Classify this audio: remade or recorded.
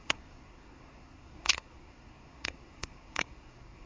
remade